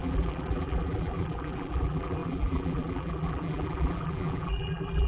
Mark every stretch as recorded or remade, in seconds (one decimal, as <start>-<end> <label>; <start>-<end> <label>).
0.0-5.1 remade

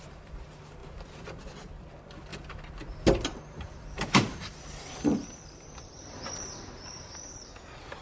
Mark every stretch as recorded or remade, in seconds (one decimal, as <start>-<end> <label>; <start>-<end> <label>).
0.0-8.0 remade

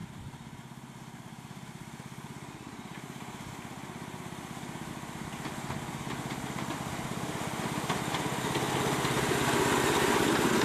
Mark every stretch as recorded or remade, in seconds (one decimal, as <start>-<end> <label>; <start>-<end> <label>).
0.0-10.6 recorded

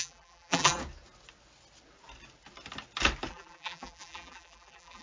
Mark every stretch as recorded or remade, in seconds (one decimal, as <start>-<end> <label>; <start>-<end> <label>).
0.0-0.8 remade; 0.8-3.3 recorded; 3.3-5.0 remade

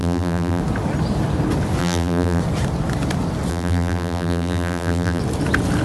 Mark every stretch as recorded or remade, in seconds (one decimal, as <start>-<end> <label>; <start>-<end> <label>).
0.0-0.6 remade; 0.6-1.8 recorded; 1.8-2.4 remade; 2.4-3.5 recorded; 3.5-5.2 remade; 5.2-5.8 recorded

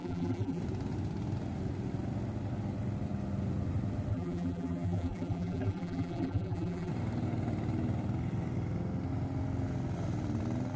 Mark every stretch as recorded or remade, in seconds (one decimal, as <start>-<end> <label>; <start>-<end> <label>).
0.0-0.6 remade; 0.6-4.1 recorded; 4.1-6.9 remade; 6.9-10.8 recorded

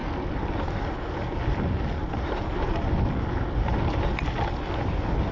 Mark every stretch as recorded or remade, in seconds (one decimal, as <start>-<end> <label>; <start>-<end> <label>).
0.0-2.0 recorded; 2.0-2.5 remade; 2.5-5.3 recorded

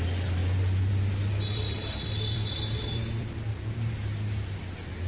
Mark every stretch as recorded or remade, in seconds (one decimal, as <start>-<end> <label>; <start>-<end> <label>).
0.0-1.3 recorded; 1.3-3.4 remade; 3.4-5.1 recorded